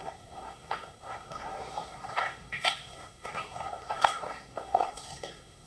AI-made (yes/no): yes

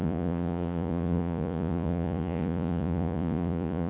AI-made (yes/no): yes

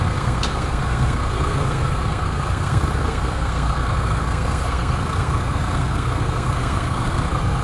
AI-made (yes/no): yes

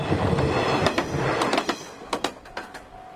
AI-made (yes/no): no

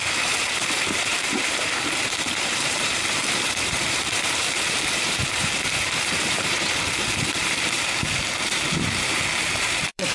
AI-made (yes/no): yes